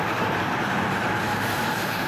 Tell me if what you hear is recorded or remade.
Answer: remade